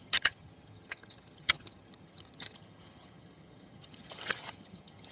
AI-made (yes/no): yes